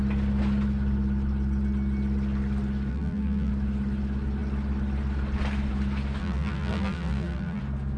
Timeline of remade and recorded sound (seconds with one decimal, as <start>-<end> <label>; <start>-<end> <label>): 0.0-2.9 recorded; 2.9-3.5 remade; 3.5-6.2 recorded; 6.2-7.6 remade; 7.6-8.0 recorded